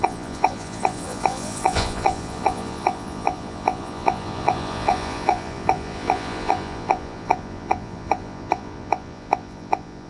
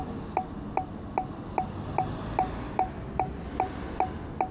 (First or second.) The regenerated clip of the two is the first